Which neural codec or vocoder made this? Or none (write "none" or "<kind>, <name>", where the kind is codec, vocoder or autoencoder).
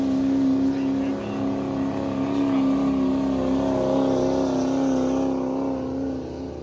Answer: none